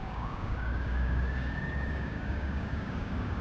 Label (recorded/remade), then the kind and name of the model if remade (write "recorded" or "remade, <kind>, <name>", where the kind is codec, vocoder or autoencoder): remade, codec, DAC